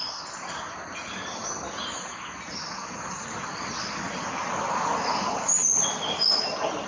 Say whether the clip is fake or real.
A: real